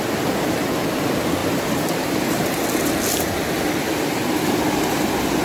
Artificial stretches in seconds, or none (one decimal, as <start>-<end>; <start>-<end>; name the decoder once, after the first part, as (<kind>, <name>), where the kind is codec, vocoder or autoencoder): 1.4-2.6 (vocoder, BigVGAN v2)